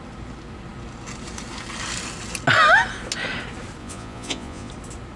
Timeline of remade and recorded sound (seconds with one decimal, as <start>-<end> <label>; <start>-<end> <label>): 0.0-3.8 recorded; 3.8-4.7 remade; 4.7-5.2 recorded